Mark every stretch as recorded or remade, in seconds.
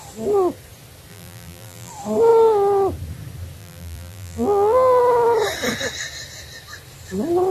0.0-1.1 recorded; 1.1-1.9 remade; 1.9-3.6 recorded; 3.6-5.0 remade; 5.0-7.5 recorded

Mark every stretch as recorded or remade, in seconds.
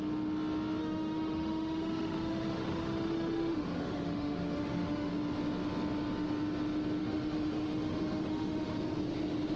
0.0-0.8 recorded; 0.8-5.1 remade; 5.1-7.0 recorded; 7.0-8.8 remade; 8.8-9.6 recorded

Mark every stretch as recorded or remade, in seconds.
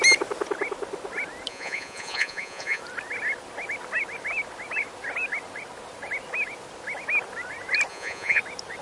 0.0-1.5 recorded; 1.5-2.8 remade; 2.8-7.9 recorded; 7.9-8.4 remade; 8.4-8.8 recorded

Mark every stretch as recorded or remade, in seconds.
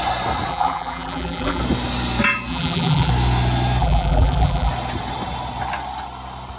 0.0-0.5 recorded; 0.5-1.6 remade; 1.6-2.5 recorded; 2.5-3.1 remade; 3.1-3.8 recorded; 3.8-4.7 remade; 4.7-6.6 recorded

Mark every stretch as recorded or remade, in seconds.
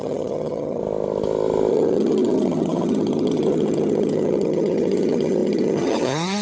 0.0-0.8 remade; 0.8-1.7 recorded; 1.7-6.4 remade